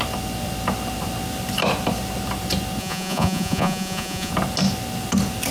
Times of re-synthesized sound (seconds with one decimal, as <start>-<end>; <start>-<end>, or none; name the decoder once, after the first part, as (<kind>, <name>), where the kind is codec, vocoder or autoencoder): 2.8-4.3 (vocoder, Vocos)